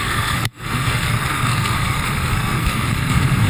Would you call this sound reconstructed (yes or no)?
yes